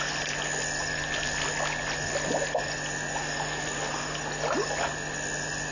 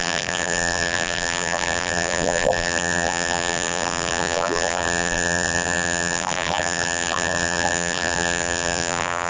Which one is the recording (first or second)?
first